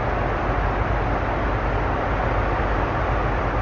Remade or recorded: recorded